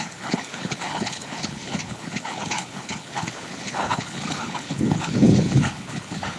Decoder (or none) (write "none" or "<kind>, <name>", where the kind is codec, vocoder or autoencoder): codec, HILCodec